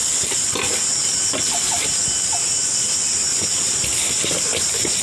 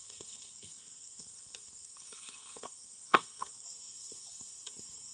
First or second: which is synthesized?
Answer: second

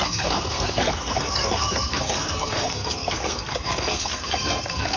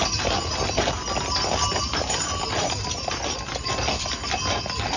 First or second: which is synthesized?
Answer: first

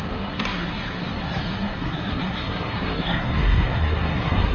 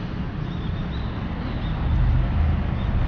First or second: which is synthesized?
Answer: first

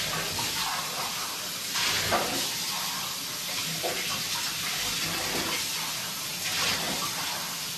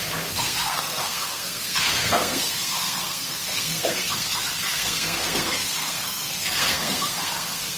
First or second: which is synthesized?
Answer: second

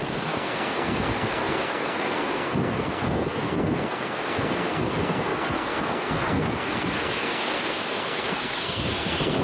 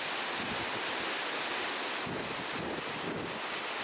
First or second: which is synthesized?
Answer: first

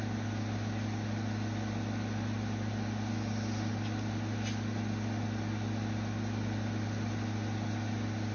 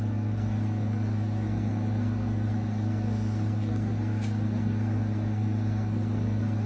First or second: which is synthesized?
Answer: second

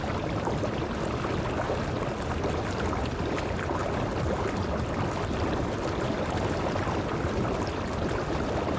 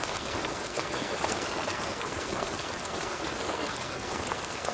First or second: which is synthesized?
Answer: second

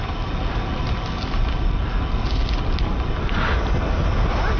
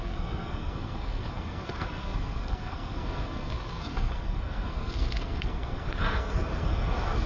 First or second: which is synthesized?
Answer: second